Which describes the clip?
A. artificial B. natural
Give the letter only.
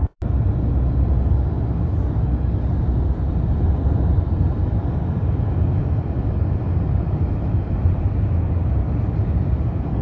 B